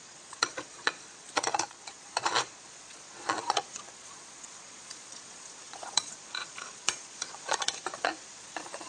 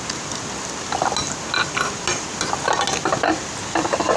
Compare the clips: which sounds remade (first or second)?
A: first